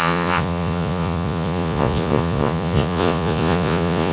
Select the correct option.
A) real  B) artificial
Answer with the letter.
B